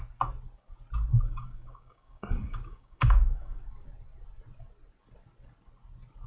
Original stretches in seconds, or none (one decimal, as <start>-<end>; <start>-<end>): 0.0-1.1; 3.7-6.3